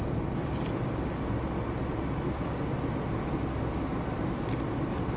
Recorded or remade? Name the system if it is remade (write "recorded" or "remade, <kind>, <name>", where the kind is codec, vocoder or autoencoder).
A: recorded